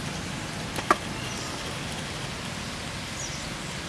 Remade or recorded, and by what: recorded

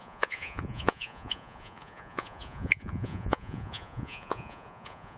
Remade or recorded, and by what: remade, vocoder, Vocos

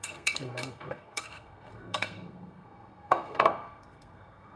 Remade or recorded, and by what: remade, codec, SNAC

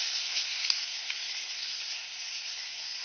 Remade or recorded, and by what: remade, codec, SNAC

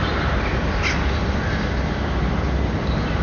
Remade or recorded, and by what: recorded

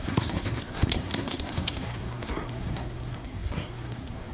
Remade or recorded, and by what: remade, codec, SNAC